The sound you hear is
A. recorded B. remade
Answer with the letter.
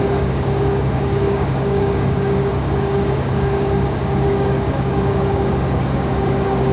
B